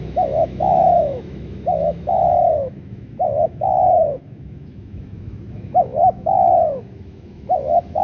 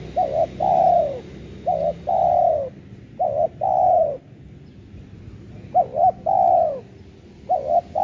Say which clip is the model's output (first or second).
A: first